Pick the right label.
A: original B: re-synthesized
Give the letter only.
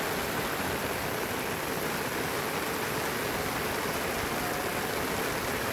A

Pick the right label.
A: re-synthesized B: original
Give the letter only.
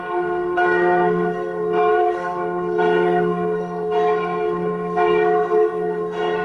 A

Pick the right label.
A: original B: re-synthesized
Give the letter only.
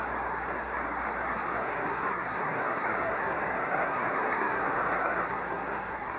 B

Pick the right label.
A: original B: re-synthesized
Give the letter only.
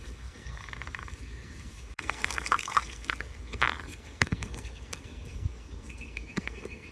B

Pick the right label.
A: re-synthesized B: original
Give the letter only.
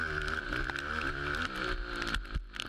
B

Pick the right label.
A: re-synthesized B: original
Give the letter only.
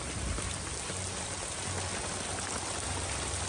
B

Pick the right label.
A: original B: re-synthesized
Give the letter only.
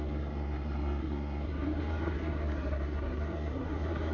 B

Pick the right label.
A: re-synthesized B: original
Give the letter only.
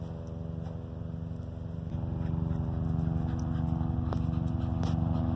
B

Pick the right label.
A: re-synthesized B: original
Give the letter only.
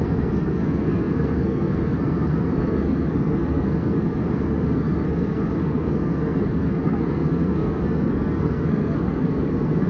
A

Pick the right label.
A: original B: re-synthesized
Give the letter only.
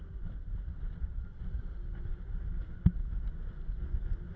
A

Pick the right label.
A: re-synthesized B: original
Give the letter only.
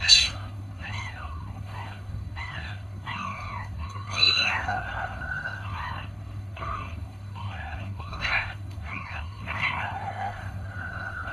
A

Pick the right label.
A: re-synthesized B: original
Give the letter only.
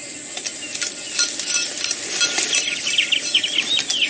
B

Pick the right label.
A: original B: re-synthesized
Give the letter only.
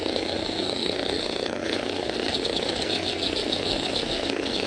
B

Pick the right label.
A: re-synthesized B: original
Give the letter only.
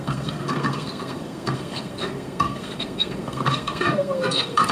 A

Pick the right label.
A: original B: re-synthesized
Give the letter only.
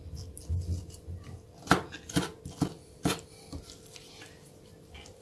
A